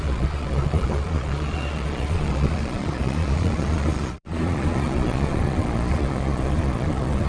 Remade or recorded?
remade